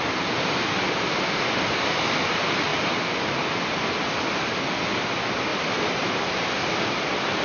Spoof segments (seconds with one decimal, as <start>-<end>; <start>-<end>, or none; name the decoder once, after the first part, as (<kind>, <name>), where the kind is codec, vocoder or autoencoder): none